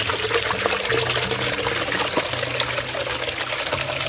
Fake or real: real